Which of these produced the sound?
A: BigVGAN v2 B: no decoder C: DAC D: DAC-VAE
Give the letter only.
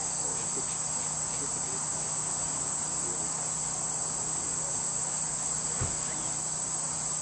B